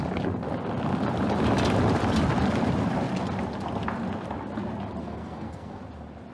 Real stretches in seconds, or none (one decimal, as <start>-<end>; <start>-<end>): 0.0-5.0; 5.8-6.3